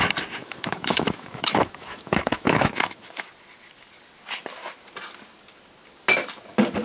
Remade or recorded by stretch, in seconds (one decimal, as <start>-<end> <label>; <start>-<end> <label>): 0.0-0.4 recorded; 0.4-3.3 remade; 3.3-6.8 recorded